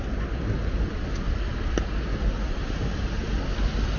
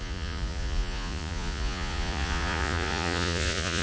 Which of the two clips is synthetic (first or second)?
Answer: second